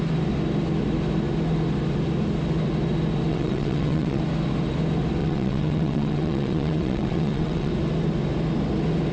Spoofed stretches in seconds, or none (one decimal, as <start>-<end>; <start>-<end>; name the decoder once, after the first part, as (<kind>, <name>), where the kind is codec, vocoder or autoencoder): 3.3-4.2 (vocoder, WaveNeXt); 5.2-7.7

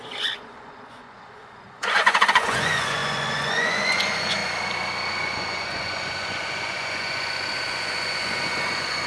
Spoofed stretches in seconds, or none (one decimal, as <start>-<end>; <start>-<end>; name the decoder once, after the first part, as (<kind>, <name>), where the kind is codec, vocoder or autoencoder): 0.0-4.4 (vocoder, Vocos); 5.1-9.1

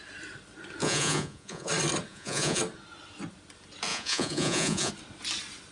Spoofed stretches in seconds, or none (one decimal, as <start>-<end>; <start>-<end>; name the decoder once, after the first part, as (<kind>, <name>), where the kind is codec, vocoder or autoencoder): 0.8-1.7 (vocoder, Vocos); 2.1-2.6; 3.9-4.9

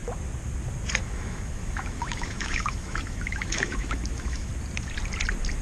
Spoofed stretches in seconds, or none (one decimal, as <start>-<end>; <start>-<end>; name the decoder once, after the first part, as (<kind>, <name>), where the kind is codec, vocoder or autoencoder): 1.0-4.5 (autoencoder, DAC-VAE)

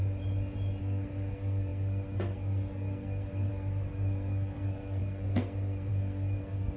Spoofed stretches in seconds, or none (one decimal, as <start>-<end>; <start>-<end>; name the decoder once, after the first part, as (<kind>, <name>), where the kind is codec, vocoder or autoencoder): 0.8-6.8 (codec, SNAC)

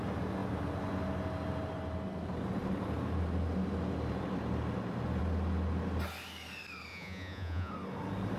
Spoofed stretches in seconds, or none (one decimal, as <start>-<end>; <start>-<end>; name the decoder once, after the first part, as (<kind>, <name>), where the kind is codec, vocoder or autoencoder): 6.9-7.7 (vocoder, Vocos)